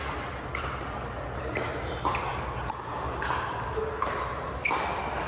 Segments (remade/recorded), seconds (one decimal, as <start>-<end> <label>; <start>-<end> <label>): 0.0-5.3 recorded